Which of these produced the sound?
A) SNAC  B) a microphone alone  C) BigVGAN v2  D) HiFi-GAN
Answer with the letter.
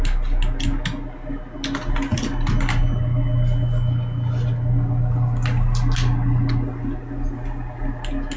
B